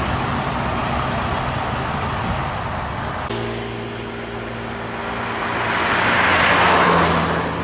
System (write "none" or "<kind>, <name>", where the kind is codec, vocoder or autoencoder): none